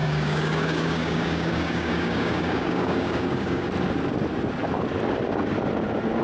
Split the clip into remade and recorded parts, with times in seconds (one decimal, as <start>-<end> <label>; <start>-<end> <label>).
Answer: 0.0-3.7 remade; 3.7-6.2 recorded